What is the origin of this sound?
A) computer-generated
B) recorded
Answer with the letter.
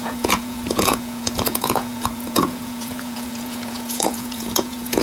A